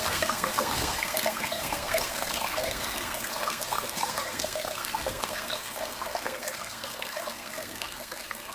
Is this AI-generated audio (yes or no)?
yes